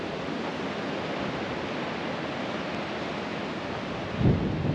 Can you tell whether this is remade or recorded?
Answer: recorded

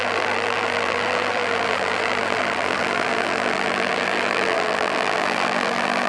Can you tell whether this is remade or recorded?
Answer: remade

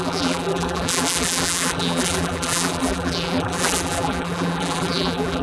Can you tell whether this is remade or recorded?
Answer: remade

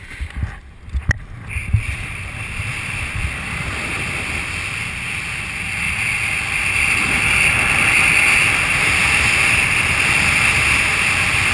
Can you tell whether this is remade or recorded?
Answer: recorded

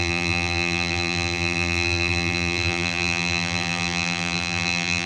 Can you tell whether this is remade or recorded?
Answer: remade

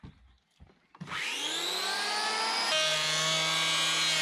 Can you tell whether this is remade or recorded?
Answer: recorded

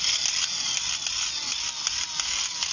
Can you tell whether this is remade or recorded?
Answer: recorded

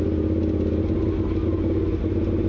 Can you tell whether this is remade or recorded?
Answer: recorded